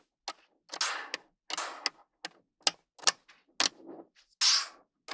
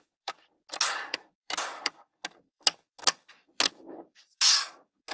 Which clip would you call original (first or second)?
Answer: first